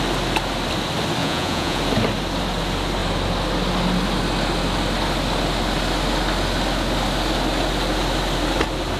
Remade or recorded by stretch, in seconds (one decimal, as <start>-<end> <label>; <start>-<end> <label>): 0.0-1.2 recorded; 1.2-1.8 remade; 1.8-9.0 recorded